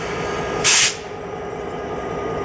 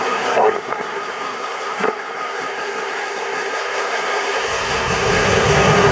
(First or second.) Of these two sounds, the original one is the first